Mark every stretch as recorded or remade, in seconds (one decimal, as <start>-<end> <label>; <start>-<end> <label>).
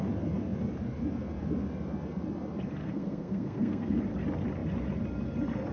0.0-2.8 recorded; 2.8-4.0 remade; 4.0-5.7 recorded